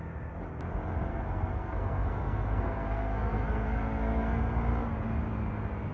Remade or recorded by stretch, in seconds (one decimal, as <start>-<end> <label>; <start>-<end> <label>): 0.0-1.1 recorded; 1.1-4.6 remade; 4.6-5.9 recorded